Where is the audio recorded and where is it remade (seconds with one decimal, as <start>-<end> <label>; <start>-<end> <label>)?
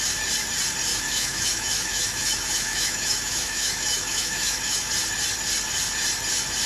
0.0-0.9 recorded; 0.9-4.9 remade; 4.9-6.7 recorded